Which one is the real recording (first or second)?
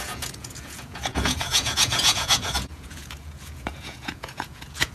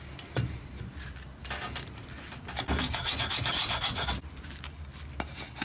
second